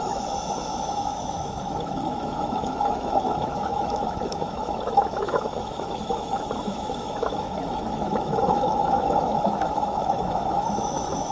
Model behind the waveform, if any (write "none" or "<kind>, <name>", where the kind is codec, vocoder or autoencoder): autoencoder, DAC-VAE